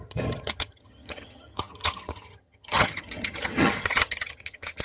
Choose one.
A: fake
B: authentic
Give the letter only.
A